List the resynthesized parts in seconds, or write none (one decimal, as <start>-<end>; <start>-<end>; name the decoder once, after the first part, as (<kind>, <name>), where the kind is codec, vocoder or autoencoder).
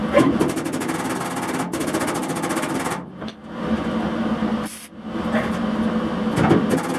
2.2-6.4 (vocoder, BigVGAN v2)